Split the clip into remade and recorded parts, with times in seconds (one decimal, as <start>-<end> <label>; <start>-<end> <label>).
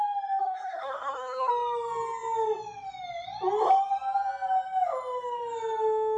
0.0-0.4 recorded; 0.4-1.5 remade; 1.5-6.2 recorded